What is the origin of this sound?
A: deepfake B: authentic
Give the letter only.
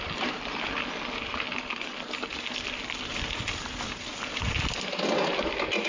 B